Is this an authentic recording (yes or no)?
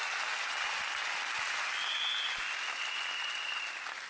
yes